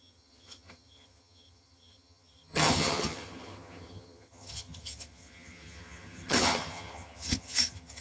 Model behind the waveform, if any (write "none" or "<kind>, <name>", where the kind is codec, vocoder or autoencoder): vocoder, HiFi-GAN